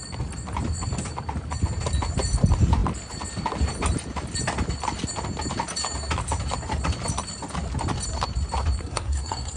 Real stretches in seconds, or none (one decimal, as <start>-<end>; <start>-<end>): 0.0-8.8